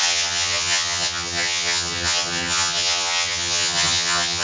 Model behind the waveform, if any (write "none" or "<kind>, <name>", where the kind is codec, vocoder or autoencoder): vocoder, HiFi-GAN